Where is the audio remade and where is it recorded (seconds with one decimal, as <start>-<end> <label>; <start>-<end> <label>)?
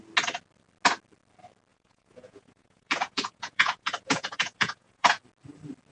0.0-1.7 recorded; 1.7-5.2 remade; 5.2-5.9 recorded